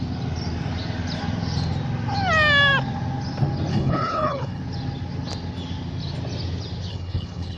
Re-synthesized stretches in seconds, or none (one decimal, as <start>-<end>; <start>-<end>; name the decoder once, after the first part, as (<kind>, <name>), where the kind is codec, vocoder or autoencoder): 3.7-4.6 (codec, HILCodec); 6.9-7.6